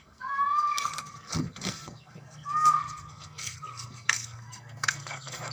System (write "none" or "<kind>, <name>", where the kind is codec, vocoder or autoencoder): codec, SNAC